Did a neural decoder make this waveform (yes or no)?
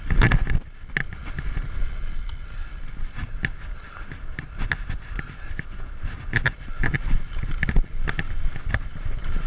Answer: no